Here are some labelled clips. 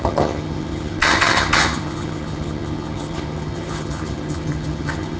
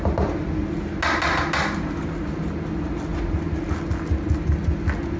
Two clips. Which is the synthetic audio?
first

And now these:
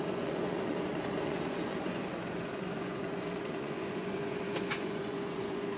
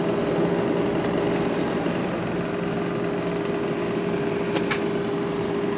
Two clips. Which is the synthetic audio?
first